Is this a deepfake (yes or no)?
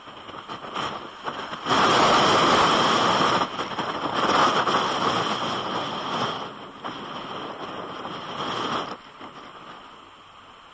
no